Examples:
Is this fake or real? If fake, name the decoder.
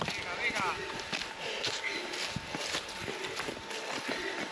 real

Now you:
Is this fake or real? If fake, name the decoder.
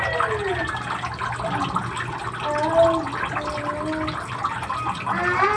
real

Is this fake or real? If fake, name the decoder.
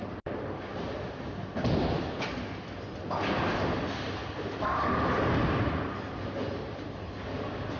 real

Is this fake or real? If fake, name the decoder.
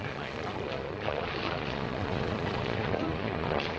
fake, vocoder, Vocos